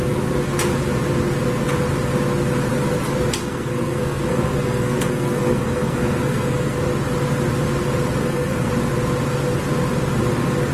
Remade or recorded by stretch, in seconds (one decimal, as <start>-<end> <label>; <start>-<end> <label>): 0.0-3.4 recorded; 3.4-6.8 remade; 6.8-8.2 recorded; 8.2-8.7 remade; 8.7-10.7 recorded